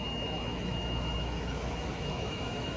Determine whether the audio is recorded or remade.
remade